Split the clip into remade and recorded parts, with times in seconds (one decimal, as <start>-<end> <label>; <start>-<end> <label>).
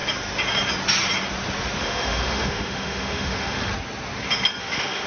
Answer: 0.0-1.8 recorded; 1.8-3.7 remade; 3.7-4.6 recorded; 4.6-5.1 remade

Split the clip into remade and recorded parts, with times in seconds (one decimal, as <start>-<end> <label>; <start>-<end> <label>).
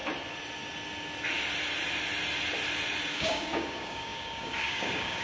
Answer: 0.0-3.1 recorded; 3.1-5.2 remade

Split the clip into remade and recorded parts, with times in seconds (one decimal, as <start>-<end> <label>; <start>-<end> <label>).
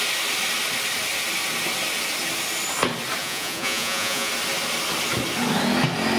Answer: 0.0-3.2 recorded; 3.2-4.3 remade; 4.3-6.2 recorded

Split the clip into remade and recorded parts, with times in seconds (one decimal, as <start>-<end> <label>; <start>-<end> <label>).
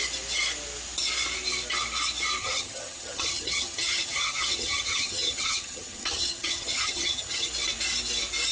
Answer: 0.0-2.4 recorded; 2.4-7.5 remade; 7.5-8.5 recorded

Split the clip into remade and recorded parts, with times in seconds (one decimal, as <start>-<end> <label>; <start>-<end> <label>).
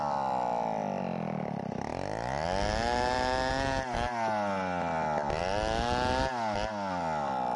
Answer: 0.0-7.6 recorded